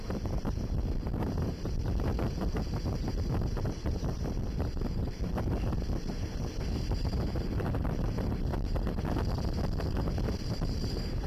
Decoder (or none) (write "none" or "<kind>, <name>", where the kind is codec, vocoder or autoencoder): vocoder, BigVGAN v2